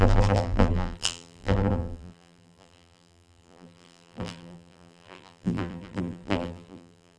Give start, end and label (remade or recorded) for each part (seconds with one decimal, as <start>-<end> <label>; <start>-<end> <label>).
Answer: 0.0-7.2 remade